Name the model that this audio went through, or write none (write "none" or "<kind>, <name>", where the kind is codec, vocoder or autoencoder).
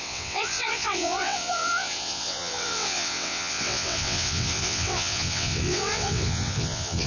vocoder, WaveNeXt